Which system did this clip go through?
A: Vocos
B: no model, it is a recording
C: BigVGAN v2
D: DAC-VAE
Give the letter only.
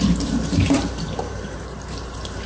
C